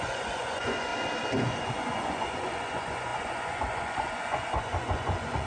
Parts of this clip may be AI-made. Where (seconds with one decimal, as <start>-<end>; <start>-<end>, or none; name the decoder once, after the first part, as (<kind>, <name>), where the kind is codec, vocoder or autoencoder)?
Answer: 0.0-0.9 (vocoder, Vocos); 1.4-5.5